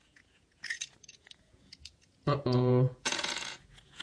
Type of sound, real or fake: fake